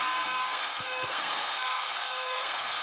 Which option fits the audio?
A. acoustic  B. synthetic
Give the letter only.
B